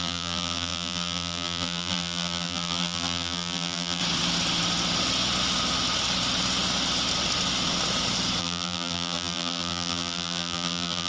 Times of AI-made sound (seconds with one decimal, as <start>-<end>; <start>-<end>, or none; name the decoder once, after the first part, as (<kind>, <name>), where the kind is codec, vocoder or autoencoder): 0.0-4.0 (vocoder, BigVGAN v2); 8.4-11.1